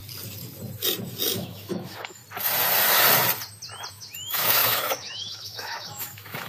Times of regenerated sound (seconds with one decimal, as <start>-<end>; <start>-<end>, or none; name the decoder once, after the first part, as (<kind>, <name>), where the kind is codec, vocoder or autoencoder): 1.3-2.2 (autoencoder, DAC-VAE); 3.9-6.5